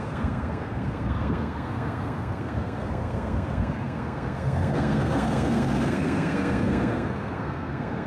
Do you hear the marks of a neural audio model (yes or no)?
yes